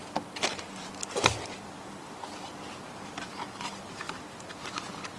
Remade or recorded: remade